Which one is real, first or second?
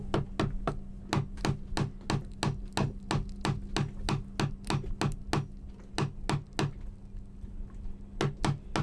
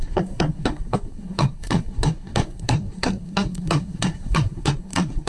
first